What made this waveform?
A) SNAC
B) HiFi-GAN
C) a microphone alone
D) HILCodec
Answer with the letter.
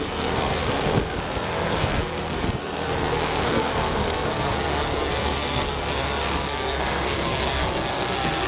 A